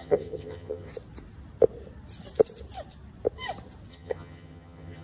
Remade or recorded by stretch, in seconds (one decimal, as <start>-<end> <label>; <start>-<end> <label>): 0.0-0.9 remade; 0.9-3.9 recorded; 3.9-5.0 remade